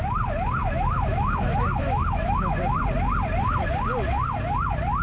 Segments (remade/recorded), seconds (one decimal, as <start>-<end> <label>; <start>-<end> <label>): 0.0-0.6 recorded; 0.6-2.8 remade; 2.8-5.0 recorded